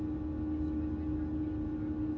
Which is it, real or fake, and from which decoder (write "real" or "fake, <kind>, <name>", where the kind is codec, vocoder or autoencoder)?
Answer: real